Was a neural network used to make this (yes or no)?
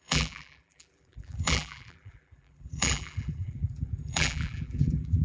yes